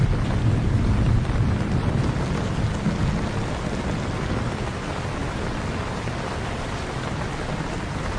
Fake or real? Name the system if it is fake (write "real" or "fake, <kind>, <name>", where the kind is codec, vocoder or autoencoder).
real